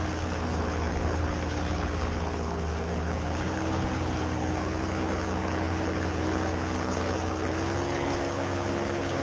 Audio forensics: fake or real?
fake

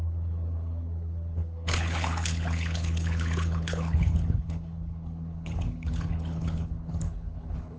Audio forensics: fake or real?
fake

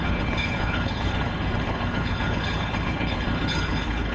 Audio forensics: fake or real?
fake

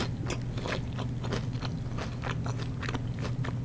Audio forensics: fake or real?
real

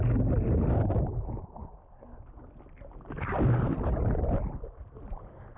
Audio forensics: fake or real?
real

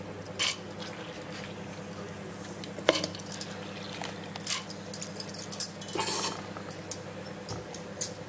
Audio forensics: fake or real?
real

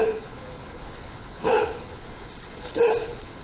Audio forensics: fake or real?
fake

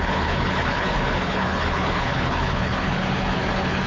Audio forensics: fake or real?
fake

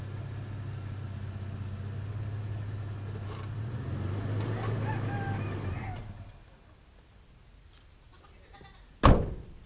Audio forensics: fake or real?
real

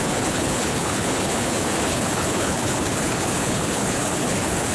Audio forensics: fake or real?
fake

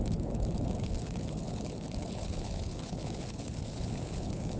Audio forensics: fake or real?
fake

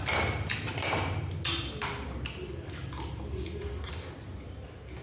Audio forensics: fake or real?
real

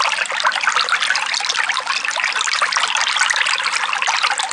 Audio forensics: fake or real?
real